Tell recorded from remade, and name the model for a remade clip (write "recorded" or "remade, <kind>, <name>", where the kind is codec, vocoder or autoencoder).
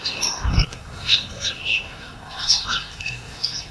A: remade, codec, SNAC